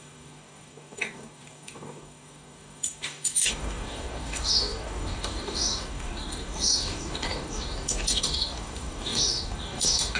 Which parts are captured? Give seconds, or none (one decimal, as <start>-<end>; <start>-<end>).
none